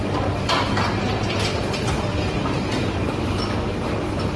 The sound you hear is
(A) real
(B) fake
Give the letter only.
A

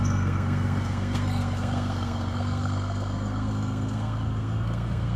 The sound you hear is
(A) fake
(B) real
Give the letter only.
A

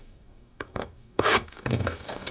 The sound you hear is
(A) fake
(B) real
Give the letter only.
A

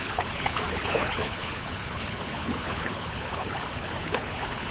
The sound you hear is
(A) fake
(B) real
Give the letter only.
A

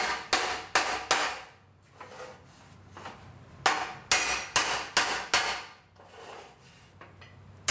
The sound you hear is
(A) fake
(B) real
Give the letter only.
B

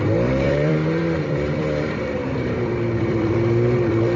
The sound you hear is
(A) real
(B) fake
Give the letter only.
B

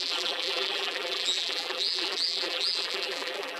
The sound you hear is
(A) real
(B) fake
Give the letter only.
B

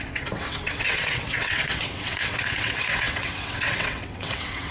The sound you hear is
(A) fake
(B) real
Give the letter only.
A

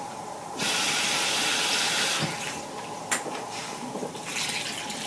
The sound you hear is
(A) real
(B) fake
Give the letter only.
A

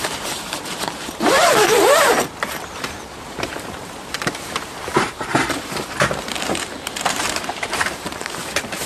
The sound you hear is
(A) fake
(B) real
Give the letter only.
A